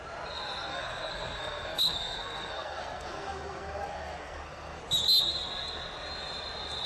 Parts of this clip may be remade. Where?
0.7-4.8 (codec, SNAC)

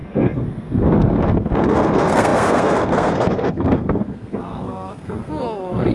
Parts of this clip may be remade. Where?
0.0-5.9 (codec, SNAC)

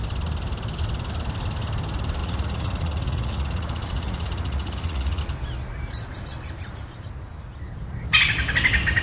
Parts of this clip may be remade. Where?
2.2-5.2 (vocoder, Vocos)

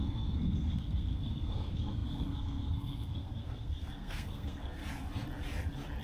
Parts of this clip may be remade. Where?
0.0-4.8 (codec, SNAC)

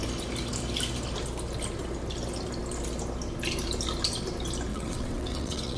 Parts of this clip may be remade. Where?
4.7-5.8 (vocoder, WaveNeXt)

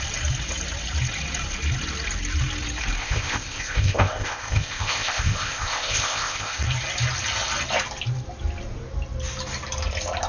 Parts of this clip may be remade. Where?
3.0-6.6 (codec, ZipCodec)

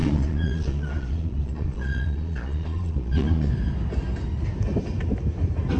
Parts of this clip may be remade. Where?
0.0-3.5 (vocoder, Vocos)

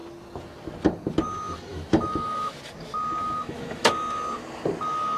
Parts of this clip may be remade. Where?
1.7-2.5 (autoencoder, DAC-VAE); 3.2-3.9